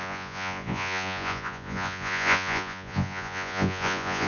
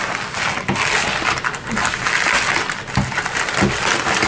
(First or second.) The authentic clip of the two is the second